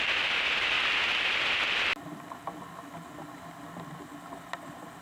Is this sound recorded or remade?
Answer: recorded